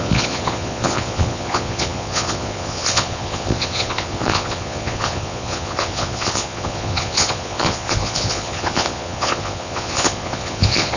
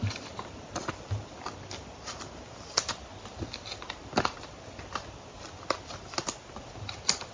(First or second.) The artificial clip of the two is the first